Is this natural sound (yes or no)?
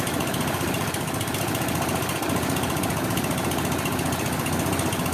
yes